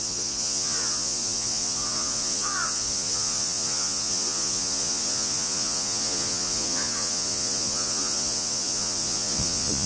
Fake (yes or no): yes